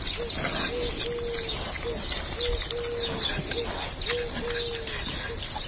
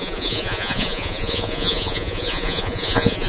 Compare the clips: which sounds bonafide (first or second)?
first